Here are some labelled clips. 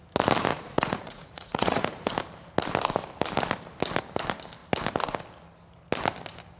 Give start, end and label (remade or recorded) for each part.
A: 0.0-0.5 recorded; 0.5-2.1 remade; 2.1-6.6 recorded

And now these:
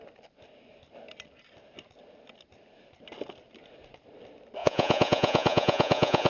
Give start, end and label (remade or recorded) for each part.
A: 0.0-4.6 recorded; 4.6-6.3 remade

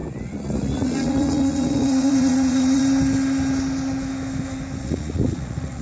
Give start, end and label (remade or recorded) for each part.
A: 0.0-2.8 remade; 2.8-4.8 recorded; 4.8-5.8 remade

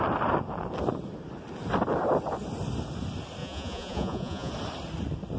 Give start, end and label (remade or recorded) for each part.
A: 0.0-3.4 recorded; 3.4-4.5 remade; 4.5-5.4 recorded

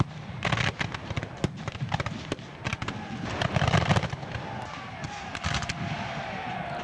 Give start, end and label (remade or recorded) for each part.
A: 0.0-6.8 recorded

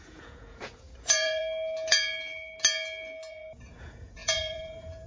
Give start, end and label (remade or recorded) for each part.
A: 0.0-1.4 remade; 1.4-3.3 recorded; 3.3-5.1 remade

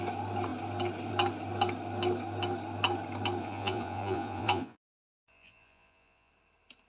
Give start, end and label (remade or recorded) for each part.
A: 0.0-3.4 recorded; 3.4-6.3 remade; 6.3-6.9 recorded